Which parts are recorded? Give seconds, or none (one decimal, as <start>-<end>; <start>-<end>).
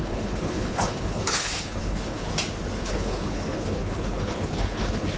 2.3-2.8